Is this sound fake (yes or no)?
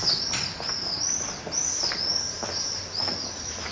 no